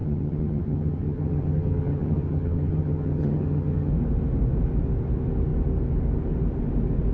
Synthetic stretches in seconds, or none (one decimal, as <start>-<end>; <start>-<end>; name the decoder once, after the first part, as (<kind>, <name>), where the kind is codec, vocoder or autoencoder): 0.0-3.9 (vocoder, HiFi-GAN)